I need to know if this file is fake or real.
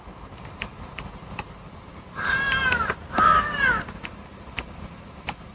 fake